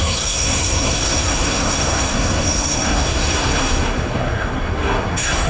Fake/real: fake